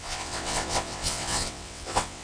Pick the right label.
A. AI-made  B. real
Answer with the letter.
A